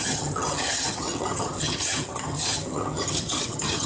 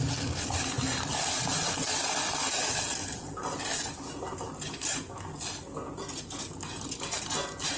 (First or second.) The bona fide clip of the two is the second